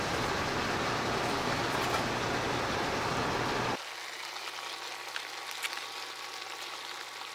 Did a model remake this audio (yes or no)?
no